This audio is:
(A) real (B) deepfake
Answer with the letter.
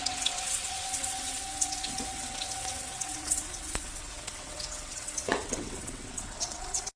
B